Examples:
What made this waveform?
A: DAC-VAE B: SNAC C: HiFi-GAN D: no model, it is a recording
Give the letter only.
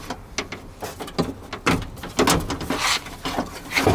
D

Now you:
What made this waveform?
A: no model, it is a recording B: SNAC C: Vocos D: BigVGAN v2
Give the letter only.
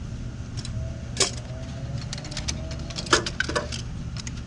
A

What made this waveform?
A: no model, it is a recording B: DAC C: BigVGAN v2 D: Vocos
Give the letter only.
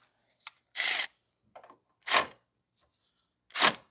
A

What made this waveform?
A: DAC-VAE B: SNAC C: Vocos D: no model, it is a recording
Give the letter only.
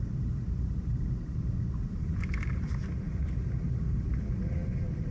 D